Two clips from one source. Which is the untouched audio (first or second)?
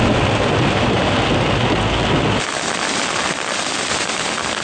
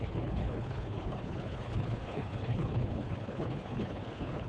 first